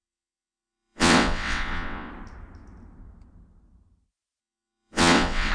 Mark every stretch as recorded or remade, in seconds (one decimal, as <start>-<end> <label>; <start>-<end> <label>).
0.0-2.1 remade; 2.1-4.4 recorded; 4.4-5.5 remade